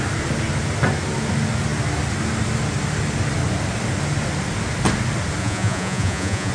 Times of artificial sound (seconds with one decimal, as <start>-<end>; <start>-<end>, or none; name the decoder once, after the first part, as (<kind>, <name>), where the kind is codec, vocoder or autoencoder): 5.4-6.5 (vocoder, Vocos)